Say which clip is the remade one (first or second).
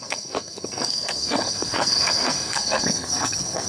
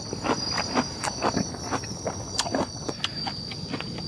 first